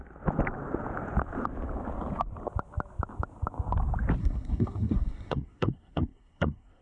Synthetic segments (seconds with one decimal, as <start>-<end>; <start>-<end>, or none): 4.2-6.8